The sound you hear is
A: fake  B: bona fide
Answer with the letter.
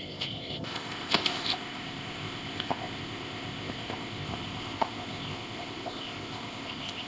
A